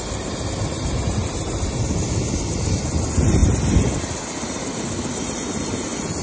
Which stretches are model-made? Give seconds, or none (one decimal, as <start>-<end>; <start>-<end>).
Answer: none